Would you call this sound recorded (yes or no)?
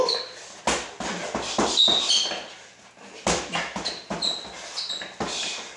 yes